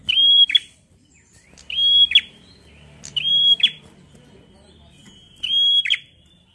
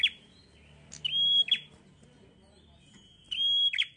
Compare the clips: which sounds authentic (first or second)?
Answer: second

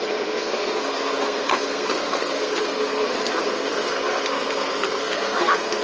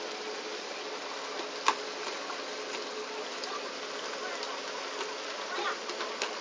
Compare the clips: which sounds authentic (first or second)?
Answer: second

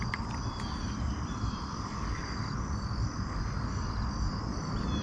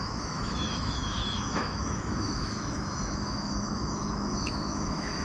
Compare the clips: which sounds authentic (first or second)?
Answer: first